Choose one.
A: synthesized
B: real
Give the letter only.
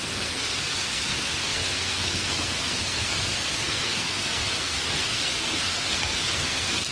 A